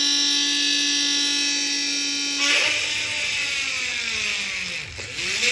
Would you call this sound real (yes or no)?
yes